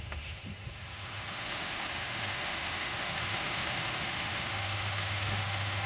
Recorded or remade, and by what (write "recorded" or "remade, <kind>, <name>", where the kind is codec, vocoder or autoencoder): remade, autoencoder, DAC-VAE